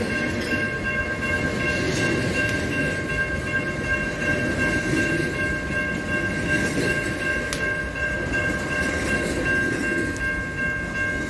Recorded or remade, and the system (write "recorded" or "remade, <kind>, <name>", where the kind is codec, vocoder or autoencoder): recorded